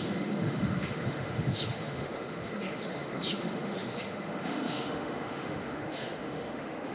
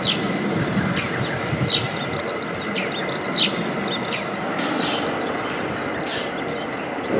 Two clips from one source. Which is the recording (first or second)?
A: second